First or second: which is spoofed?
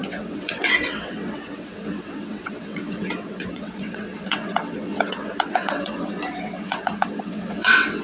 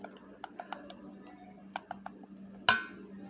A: first